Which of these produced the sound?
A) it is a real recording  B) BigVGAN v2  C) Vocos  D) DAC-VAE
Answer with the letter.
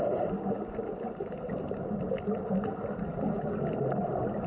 A